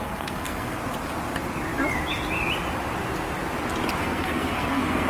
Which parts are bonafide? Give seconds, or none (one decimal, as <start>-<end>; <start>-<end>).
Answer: 0.8-3.9